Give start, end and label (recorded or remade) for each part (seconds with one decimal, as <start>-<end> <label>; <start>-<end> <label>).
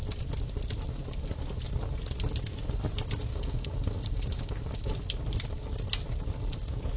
0.0-3.3 recorded; 3.3-4.9 remade; 4.9-7.0 recorded